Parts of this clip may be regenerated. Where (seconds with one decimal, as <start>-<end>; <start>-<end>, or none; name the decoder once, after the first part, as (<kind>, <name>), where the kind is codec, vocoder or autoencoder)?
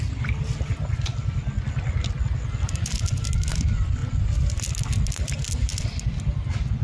none